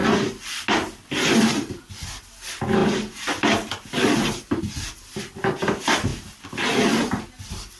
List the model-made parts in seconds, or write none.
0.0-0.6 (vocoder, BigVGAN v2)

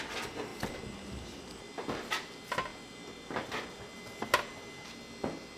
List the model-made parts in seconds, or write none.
none

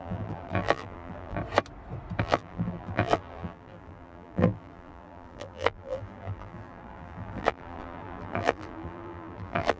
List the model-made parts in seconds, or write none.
0.0-1.4 (vocoder, BigVGAN v2); 2.2-9.8